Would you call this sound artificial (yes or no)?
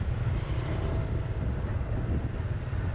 no